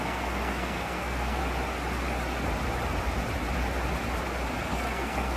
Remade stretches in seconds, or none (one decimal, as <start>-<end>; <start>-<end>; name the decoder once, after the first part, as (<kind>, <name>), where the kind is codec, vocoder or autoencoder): 0.0-1.4 (codec, SNAC); 4.6-5.4

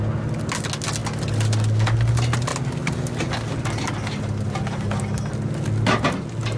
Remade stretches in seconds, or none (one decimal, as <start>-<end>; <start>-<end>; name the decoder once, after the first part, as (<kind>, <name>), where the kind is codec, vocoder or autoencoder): none

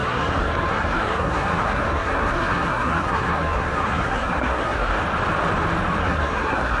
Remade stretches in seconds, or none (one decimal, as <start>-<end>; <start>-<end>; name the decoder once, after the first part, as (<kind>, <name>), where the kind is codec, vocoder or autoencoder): 0.0-4.9 (codec, SNAC); 6.0-6.8

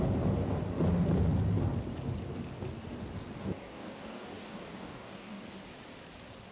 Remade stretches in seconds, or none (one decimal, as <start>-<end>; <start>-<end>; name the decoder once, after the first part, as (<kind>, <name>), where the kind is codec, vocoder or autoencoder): 3.4-5.4 (codec, DAC)

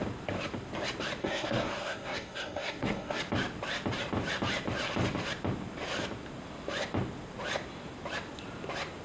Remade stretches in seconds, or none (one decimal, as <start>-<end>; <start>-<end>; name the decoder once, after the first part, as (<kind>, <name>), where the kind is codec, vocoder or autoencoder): 1.2-3.2 (codec, SNAC)

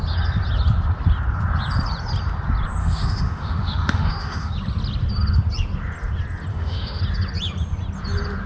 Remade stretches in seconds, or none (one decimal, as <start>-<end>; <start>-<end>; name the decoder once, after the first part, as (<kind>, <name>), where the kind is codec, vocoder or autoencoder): 2.8-4.5 (autoencoder, DAC-VAE); 6.5-7.0